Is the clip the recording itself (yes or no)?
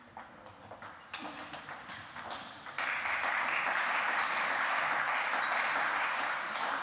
yes